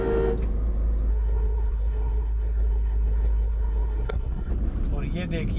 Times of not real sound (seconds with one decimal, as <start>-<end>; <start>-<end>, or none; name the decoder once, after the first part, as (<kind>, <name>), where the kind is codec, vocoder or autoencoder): 1.1-4.5 (codec, SNAC)